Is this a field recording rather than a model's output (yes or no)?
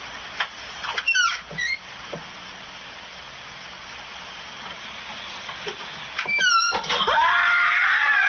yes